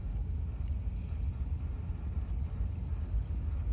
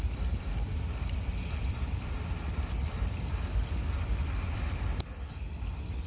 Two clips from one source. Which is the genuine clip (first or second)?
first